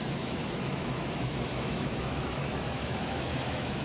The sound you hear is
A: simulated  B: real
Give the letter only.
A